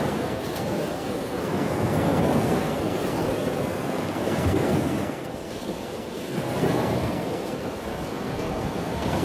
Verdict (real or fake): fake